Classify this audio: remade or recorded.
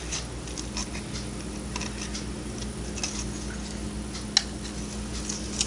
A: recorded